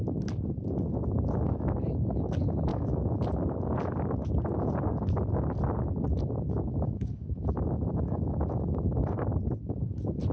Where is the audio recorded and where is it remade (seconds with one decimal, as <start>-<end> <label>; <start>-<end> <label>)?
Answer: 0.0-2.7 recorded; 2.7-3.2 remade; 3.2-6.7 recorded; 6.7-9.2 remade; 9.2-10.3 recorded